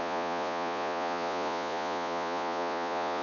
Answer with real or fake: fake